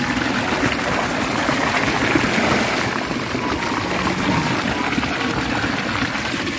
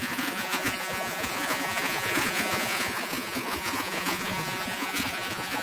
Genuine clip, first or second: first